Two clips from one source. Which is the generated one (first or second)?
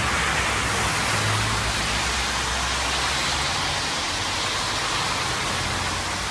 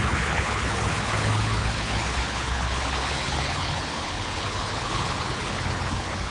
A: second